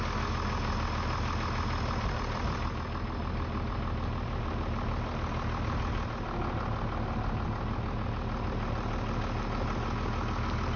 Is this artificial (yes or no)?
no